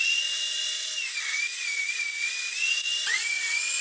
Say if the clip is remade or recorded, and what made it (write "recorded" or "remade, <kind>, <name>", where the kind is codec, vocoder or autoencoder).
remade, vocoder, Vocos